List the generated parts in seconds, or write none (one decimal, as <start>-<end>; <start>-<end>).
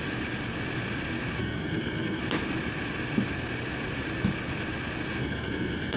1.4-2.2; 5.2-6.0